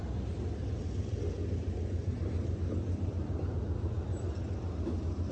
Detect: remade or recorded recorded